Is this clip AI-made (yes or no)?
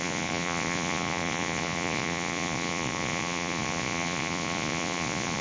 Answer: yes